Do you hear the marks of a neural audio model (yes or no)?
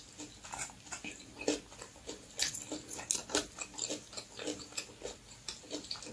no